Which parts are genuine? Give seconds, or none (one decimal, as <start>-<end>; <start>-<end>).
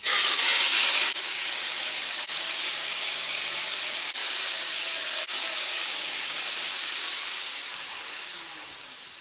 none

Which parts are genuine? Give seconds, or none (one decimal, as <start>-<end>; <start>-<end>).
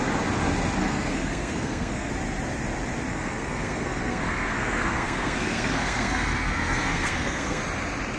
0.0-0.8; 2.1-3.1; 7.6-8.2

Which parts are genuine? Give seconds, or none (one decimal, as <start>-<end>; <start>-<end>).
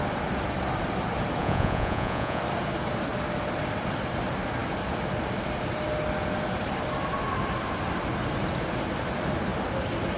0.0-1.4; 2.4-10.2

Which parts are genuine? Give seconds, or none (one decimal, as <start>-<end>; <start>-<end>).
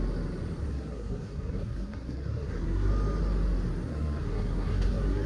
0.0-0.7; 2.9-3.9